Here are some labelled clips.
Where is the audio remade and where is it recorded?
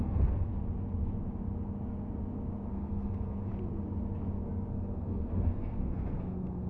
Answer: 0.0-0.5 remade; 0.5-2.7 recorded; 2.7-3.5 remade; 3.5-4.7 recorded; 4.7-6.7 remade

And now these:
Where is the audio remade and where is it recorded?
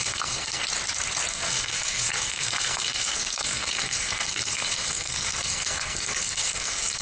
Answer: 0.0-0.6 remade; 0.6-1.3 recorded; 1.3-7.0 remade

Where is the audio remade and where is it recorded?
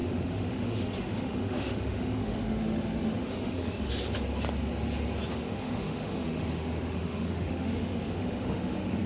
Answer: 0.0-3.9 remade; 3.9-5.3 recorded; 5.3-9.1 remade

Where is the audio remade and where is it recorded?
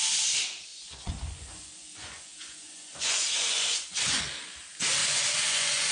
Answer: 0.0-0.7 recorded; 0.7-4.2 remade; 4.2-5.0 recorded; 5.0-5.9 remade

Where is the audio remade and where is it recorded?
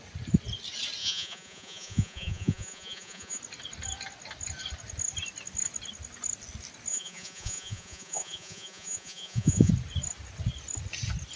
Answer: 0.0-1.0 recorded; 1.0-3.4 remade; 3.4-6.9 recorded; 6.9-9.7 remade; 9.7-11.4 recorded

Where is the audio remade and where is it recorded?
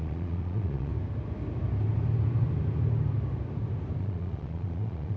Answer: 0.0-0.9 remade; 0.9-4.0 recorded; 4.0-5.2 remade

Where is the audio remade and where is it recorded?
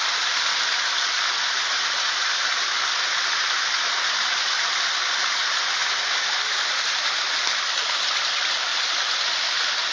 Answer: 0.0-0.5 recorded; 0.5-4.0 remade; 4.0-9.9 recorded